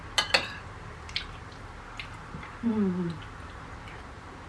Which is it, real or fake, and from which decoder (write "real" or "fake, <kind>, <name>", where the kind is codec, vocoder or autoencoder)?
real